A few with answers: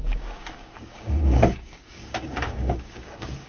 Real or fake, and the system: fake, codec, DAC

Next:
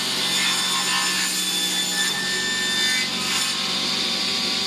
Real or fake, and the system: real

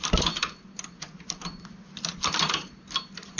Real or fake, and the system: real